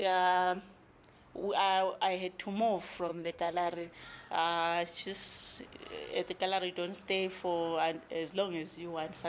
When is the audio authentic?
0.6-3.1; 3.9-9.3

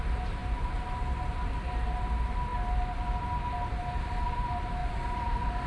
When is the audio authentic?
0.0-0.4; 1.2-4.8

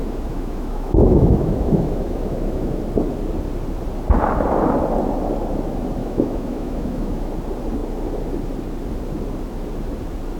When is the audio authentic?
2.8-6.0; 7.3-10.4